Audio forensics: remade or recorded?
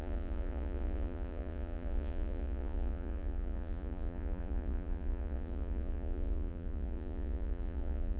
remade